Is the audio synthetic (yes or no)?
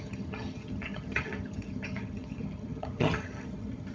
yes